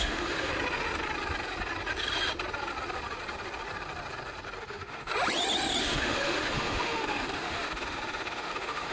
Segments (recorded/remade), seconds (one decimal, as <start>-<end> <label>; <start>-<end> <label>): 0.0-0.5 remade; 0.5-4.6 recorded; 4.6-5.1 remade; 5.1-5.8 recorded; 5.8-8.9 remade